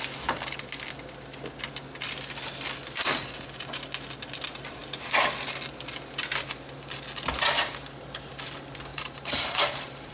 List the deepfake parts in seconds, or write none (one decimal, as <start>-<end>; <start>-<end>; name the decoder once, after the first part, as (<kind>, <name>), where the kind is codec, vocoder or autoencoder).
8.9-10.1 (vocoder, BigVGAN v2)